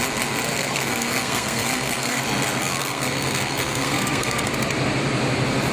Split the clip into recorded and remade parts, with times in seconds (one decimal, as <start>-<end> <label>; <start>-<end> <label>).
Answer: 0.0-0.5 recorded; 0.5-2.2 remade; 2.2-2.6 recorded; 2.6-4.5 remade; 4.5-5.7 recorded

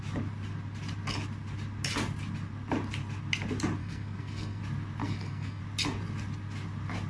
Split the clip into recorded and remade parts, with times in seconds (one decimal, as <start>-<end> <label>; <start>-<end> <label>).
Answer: 0.0-3.8 recorded; 3.8-4.6 remade; 4.6-5.0 recorded; 5.0-5.6 remade; 5.6-7.1 recorded

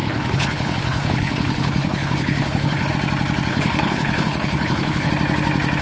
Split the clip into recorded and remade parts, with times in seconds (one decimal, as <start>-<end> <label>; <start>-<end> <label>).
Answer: 0.0-2.9 remade; 2.9-3.5 recorded; 3.5-5.1 remade; 5.1-5.8 recorded